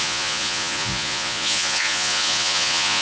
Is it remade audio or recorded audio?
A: remade